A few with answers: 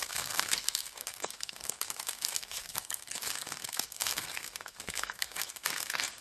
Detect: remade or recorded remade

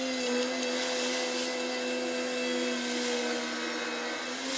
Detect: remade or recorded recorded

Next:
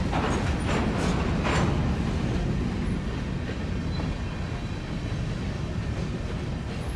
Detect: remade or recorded recorded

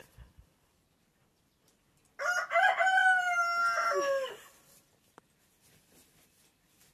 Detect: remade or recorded recorded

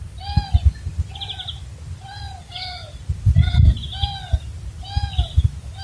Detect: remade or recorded recorded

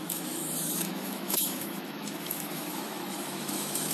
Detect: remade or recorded remade